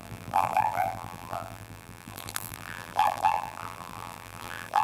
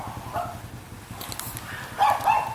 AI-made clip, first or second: first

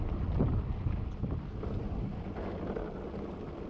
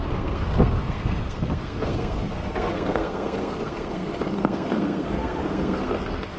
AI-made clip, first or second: second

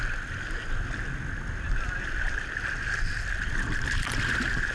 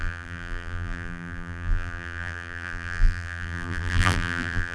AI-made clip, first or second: second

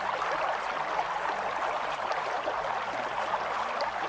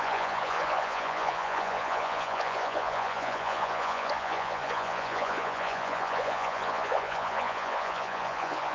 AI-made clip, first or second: second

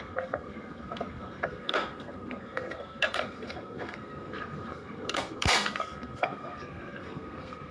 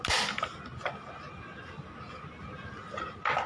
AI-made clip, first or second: first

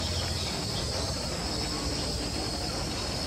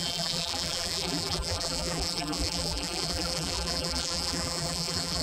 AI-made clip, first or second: second